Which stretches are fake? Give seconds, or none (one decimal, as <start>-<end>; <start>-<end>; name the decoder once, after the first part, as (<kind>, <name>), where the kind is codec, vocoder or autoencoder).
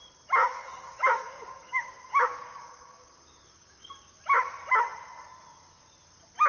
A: 0.4-4.2 (codec, DAC)